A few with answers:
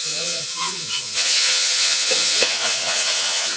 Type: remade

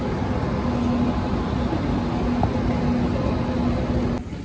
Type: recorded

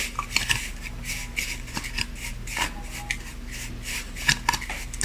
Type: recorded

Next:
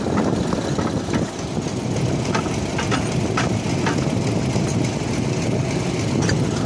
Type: recorded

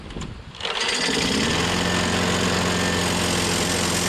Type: recorded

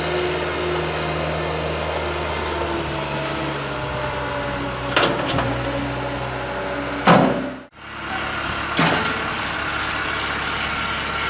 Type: recorded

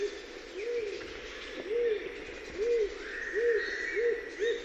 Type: recorded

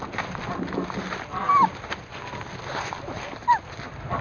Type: recorded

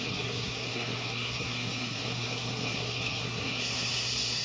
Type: remade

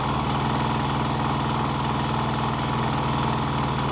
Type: recorded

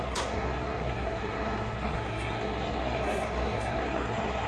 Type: remade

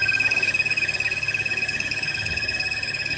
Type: remade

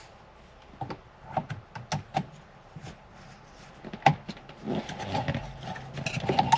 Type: recorded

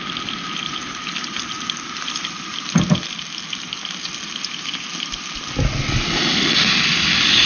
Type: recorded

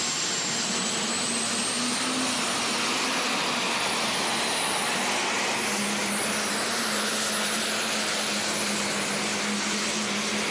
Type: recorded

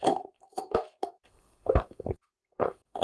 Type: remade